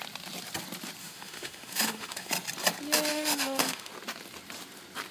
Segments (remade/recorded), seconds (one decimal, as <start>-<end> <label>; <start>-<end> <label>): 0.0-1.0 recorded; 1.0-2.3 remade; 2.3-3.1 recorded; 3.1-3.9 remade; 3.9-5.1 recorded